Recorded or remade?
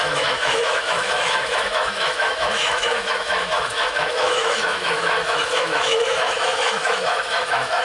remade